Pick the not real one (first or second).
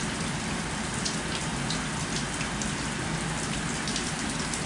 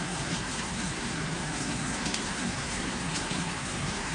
second